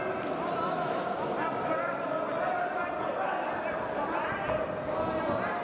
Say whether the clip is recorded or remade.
recorded